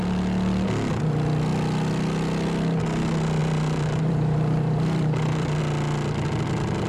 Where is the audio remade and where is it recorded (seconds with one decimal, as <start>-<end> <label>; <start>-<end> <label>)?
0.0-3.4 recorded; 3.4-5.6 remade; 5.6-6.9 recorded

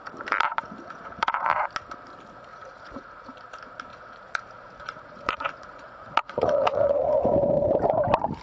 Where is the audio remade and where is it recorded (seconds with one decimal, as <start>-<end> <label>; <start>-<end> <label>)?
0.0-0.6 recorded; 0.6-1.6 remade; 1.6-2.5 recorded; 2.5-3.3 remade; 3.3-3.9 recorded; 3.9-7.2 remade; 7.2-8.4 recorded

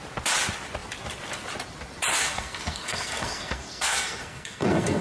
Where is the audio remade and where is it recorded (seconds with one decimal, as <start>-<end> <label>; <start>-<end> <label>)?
0.0-2.1 recorded; 2.1-5.0 remade